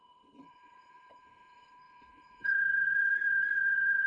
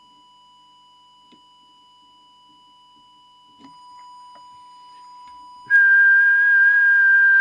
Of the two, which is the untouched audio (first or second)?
second